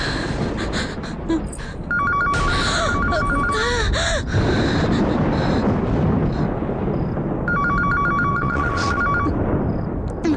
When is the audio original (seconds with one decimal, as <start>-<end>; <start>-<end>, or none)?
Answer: 0.0-8.3; 9.0-10.4